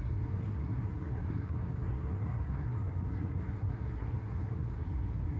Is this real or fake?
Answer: fake